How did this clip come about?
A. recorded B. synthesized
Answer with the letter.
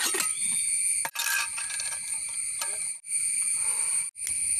A